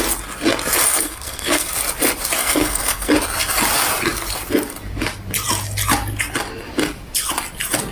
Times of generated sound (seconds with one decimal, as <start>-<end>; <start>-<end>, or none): 0.9-1.7; 2.4-3.1